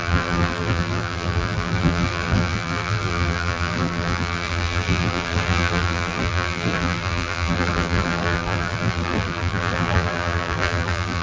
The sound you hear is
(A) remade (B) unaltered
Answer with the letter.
A